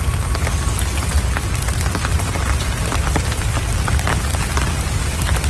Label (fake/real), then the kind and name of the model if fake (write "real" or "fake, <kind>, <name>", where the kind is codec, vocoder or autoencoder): real